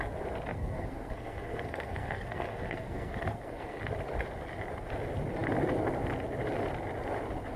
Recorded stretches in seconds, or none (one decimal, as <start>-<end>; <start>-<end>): 0.0-0.5; 3.8-7.6